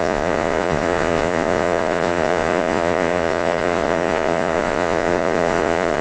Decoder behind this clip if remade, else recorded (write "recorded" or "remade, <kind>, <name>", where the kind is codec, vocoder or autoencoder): remade, vocoder, Vocos